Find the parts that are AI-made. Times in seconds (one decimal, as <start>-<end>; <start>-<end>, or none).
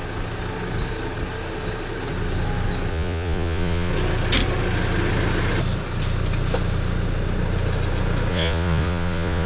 2.9-3.9; 8.3-9.5